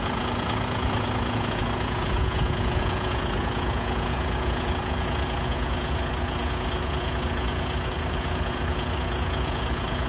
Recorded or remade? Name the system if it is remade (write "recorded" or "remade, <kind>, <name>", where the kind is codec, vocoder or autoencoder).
remade, vocoder, Vocos